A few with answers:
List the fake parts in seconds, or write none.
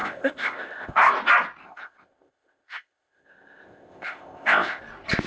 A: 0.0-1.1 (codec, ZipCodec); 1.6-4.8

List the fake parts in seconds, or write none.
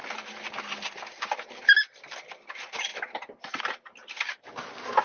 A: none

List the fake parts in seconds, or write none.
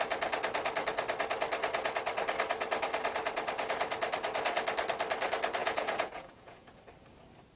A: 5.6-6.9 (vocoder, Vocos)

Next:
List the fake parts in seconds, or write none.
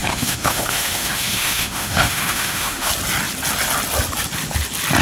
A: 0.0-2.9 (autoencoder, DAC-VAE)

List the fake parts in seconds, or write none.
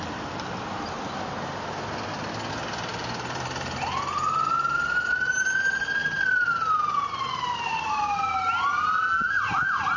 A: none